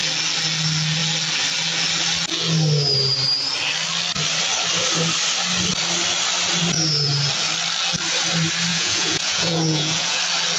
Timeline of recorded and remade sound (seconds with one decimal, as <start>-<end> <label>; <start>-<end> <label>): 0.0-8.7 recorded; 8.7-10.2 remade; 10.2-10.6 recorded